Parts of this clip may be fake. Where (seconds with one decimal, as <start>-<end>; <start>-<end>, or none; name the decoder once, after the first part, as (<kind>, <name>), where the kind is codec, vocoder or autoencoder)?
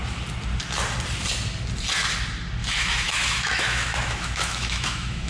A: 2.6-5.3 (autoencoder, DAC-VAE)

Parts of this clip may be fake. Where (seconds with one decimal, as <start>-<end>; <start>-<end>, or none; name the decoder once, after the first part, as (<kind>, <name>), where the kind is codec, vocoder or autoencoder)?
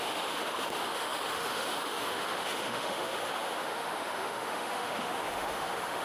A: 0.0-6.0 (autoencoder, DAC-VAE)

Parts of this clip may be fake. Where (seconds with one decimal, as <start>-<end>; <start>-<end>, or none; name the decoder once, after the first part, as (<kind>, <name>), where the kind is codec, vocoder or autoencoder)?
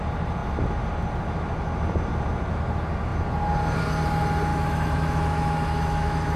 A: 4.5-6.4 (autoencoder, DAC-VAE)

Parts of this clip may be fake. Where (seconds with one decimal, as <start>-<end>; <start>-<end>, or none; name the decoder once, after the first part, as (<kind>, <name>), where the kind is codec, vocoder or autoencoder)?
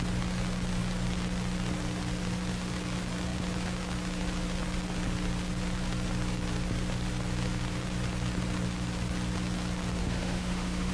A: 10.0-10.9 (autoencoder, DAC-VAE)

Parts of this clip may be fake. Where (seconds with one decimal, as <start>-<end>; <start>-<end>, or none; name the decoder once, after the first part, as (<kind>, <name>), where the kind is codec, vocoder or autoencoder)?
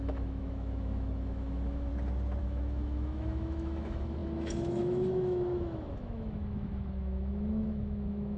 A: 0.0-1.9 (autoencoder, DAC-VAE); 2.4-8.4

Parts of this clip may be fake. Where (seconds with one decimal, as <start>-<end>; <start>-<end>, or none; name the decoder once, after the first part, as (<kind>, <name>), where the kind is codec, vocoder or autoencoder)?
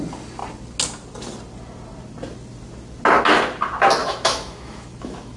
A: 4.0-5.4 (autoencoder, DAC-VAE)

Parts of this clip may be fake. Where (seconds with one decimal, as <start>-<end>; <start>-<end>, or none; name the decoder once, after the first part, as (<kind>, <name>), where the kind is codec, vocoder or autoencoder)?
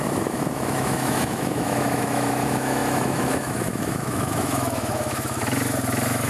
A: 0.0-6.3 (autoencoder, DAC-VAE)